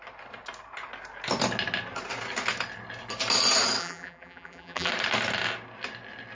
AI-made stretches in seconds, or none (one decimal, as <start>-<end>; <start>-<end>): 3.8-4.9